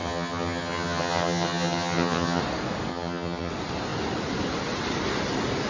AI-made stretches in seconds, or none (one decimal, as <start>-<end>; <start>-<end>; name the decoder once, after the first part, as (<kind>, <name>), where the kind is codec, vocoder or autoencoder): 0.0-2.4 (vocoder, HiFi-GAN); 2.9-3.5